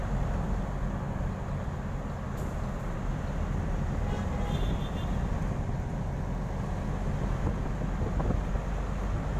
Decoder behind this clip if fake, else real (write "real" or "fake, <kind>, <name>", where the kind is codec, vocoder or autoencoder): real